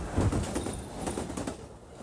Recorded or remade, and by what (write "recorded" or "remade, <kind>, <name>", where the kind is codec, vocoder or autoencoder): recorded